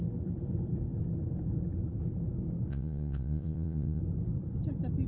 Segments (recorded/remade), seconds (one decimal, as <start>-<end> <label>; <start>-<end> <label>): 0.0-2.7 recorded; 2.7-4.0 remade; 4.0-5.1 recorded

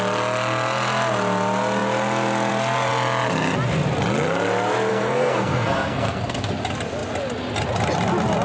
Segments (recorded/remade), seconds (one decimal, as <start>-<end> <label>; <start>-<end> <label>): 0.0-4.9 recorded; 4.9-6.5 remade; 6.5-8.4 recorded

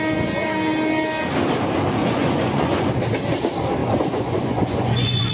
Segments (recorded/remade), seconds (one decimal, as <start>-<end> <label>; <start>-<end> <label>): 0.0-2.0 recorded; 2.0-2.8 remade; 2.8-3.8 recorded; 3.8-5.3 remade

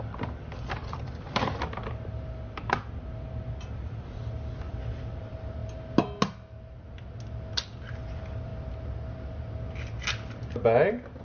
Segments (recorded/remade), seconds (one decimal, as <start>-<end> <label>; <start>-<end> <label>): 0.0-5.6 remade; 5.6-7.9 recorded; 7.9-8.5 remade; 8.5-11.2 recorded

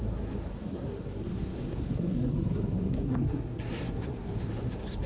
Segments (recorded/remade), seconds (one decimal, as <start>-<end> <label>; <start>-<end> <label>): 0.0-5.1 remade

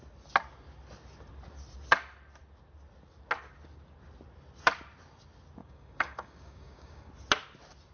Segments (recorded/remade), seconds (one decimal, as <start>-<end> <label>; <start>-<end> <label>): 0.0-5.6 recorded; 5.6-7.1 remade; 7.1-7.9 recorded

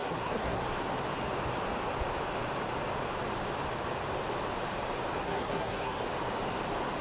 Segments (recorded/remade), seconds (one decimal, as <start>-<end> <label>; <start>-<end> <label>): 0.0-0.6 remade; 0.6-5.2 recorded; 5.2-6.0 remade; 6.0-7.0 recorded

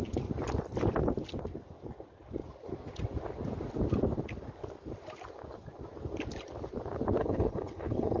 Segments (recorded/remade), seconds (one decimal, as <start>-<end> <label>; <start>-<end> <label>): 0.0-7.2 recorded; 7.2-8.2 remade